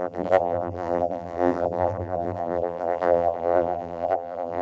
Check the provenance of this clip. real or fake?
fake